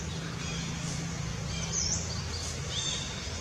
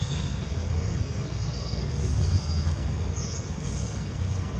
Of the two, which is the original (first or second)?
first